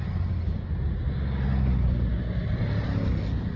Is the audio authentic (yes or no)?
yes